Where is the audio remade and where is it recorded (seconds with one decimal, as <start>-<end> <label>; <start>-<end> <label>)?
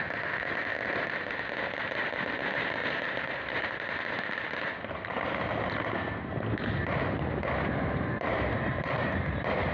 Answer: 0.0-2.8 recorded; 2.8-5.2 remade; 5.2-8.3 recorded; 8.3-9.1 remade; 9.1-9.7 recorded